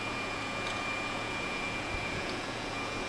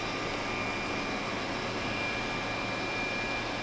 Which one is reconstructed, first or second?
first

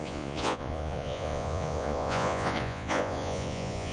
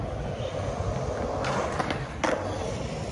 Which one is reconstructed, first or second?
first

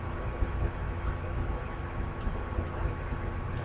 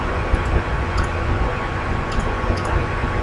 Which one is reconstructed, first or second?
second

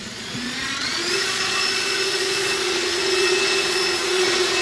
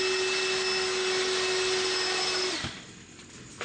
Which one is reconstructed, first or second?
first